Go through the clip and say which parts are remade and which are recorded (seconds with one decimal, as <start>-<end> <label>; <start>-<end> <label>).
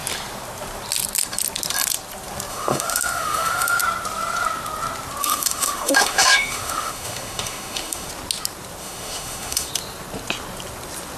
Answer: 0.0-2.5 recorded; 2.5-3.8 remade; 3.8-5.2 recorded; 5.2-8.1 remade; 8.1-8.8 recorded; 8.8-9.7 remade; 9.7-11.2 recorded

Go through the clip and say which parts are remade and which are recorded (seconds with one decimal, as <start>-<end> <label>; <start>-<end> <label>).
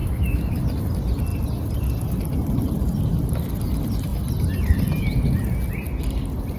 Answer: 0.0-0.6 remade; 0.6-6.6 recorded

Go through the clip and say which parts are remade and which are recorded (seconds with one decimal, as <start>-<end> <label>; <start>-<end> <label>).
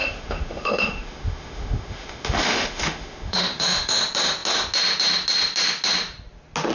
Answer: 0.0-4.0 remade; 4.0-6.7 recorded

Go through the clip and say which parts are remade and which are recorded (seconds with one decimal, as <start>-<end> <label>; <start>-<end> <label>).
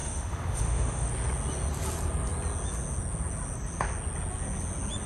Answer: 0.0-1.1 remade; 1.1-5.1 recorded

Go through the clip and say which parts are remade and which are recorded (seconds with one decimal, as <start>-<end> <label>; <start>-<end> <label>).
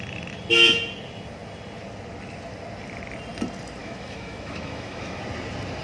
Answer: 0.0-3.8 recorded; 3.8-5.2 remade; 5.2-5.8 recorded